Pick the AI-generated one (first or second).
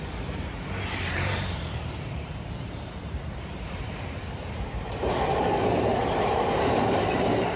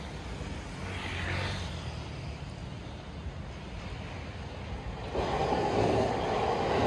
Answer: first